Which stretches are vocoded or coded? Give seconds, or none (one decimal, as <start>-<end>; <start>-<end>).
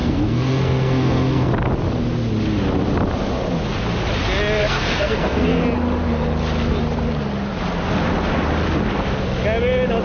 0.0-1.5; 4.6-5.6